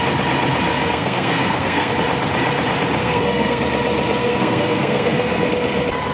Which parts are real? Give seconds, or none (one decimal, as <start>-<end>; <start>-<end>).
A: 0.0-0.7; 1.9-3.0; 3.6-4.2; 5.5-6.1